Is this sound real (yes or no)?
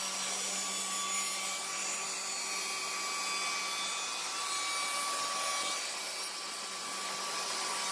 yes